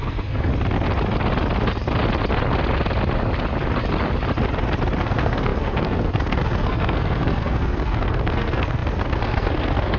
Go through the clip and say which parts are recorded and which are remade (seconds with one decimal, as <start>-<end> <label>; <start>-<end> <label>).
0.0-0.5 remade; 0.5-5.0 recorded; 5.0-10.0 remade